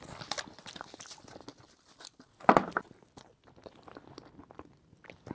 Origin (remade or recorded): recorded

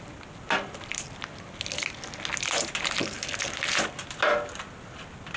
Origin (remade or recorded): recorded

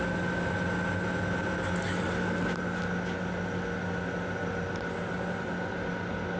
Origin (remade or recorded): recorded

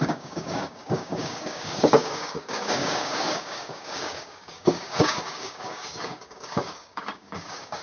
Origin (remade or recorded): remade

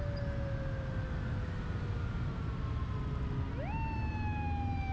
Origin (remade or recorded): recorded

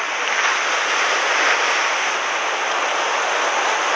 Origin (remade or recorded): recorded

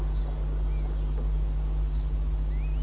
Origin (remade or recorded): recorded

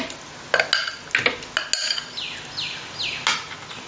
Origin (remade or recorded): recorded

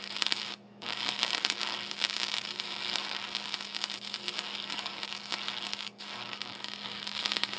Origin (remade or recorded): remade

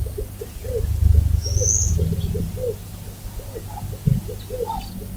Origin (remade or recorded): recorded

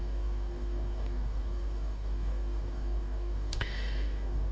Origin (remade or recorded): remade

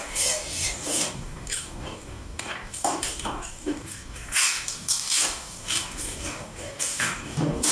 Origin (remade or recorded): remade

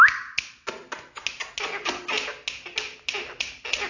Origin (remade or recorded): recorded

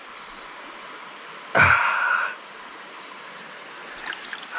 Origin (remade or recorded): recorded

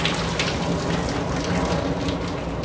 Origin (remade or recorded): recorded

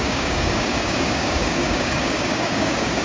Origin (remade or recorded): remade